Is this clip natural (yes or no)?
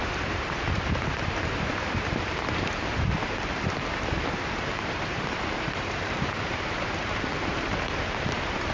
no